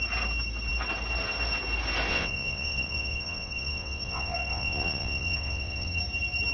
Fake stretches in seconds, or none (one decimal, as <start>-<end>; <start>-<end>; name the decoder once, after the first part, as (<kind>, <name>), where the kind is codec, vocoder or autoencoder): 2.1-6.0 (vocoder, WaveNeXt)